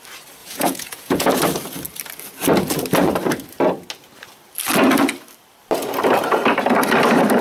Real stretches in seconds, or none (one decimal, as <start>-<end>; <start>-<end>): 0.0-0.4; 1.3-7.4